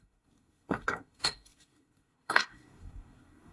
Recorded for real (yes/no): no